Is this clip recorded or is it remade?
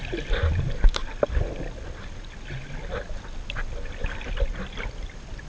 recorded